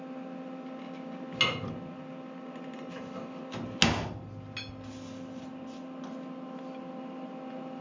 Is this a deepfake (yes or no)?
no